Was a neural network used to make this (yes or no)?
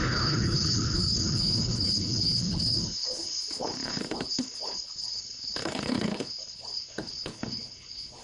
yes